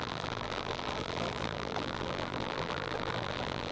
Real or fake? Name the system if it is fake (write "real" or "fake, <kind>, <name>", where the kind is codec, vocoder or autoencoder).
fake, vocoder, BigVGAN v2